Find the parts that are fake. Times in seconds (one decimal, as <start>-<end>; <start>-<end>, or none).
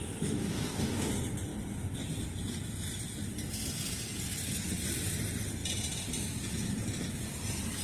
0.4-1.1